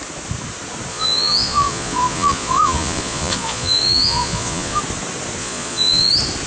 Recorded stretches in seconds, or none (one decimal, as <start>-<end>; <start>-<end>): 0.0-0.9; 4.8-5.4; 6.1-6.5